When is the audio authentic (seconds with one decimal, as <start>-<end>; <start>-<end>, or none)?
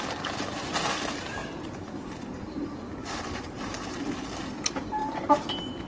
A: 0.0-1.4; 2.6-3.0; 3.6-5.0